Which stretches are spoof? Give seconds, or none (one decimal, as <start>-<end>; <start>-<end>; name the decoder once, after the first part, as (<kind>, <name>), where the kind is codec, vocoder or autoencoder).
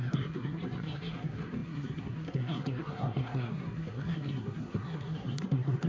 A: 0.0-5.9 (codec, SNAC)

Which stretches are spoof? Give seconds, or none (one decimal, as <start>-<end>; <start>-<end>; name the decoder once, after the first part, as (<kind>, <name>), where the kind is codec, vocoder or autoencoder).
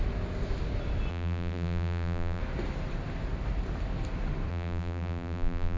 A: 1.1-2.4 (vocoder, BigVGAN v2); 4.5-5.8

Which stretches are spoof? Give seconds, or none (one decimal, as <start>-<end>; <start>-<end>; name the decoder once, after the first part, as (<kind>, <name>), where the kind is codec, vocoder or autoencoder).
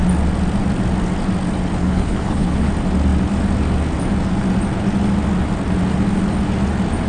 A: 1.8-2.7 (codec, HILCodec)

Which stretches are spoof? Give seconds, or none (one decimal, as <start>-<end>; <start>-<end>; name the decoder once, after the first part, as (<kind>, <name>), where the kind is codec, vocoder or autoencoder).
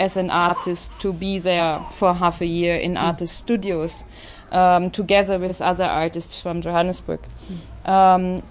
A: 0.5-1.6 (autoencoder, DAC-VAE); 2.8-3.9; 5.5-8.5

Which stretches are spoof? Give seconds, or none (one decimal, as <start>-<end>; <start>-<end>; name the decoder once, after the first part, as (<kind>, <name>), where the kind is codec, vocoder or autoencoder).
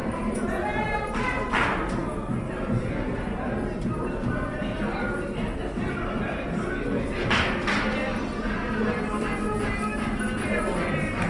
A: none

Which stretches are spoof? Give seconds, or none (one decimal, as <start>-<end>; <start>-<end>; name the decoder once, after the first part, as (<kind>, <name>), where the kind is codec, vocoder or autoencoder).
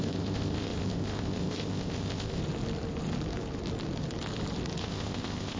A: 0.0-2.4 (codec, ZipCodec); 4.8-5.6